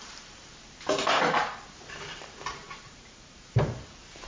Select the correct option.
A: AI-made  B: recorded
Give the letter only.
A